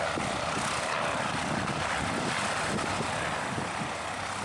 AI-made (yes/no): no